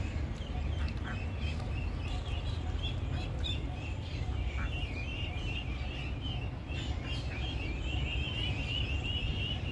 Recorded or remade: recorded